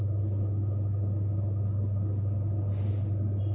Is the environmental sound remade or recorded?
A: recorded